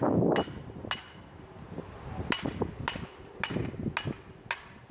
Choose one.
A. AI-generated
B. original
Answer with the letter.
B